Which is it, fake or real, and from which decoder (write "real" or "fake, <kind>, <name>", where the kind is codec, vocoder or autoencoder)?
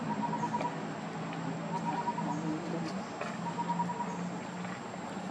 real